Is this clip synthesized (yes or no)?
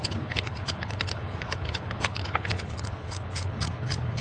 yes